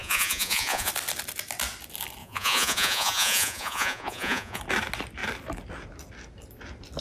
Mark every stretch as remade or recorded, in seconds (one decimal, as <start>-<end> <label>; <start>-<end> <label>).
0.0-0.9 remade; 0.9-2.2 recorded; 2.2-4.6 remade; 4.6-7.0 recorded